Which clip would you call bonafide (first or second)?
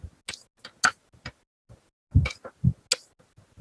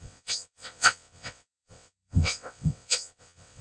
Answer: first